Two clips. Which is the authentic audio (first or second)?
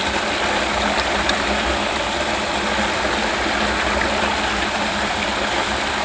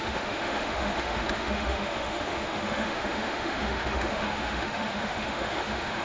first